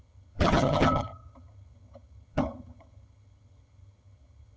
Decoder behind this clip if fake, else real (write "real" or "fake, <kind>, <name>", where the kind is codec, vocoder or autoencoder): fake, vocoder, HiFi-GAN